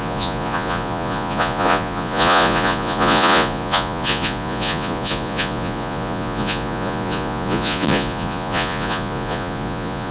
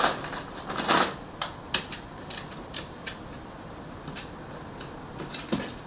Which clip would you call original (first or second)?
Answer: second